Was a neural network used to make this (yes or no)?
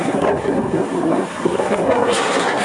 yes